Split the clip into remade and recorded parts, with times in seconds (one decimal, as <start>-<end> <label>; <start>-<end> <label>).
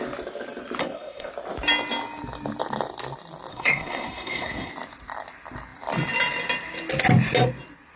0.0-0.8 recorded; 0.8-1.3 remade; 1.3-3.5 recorded; 3.5-4.7 remade; 4.7-8.0 recorded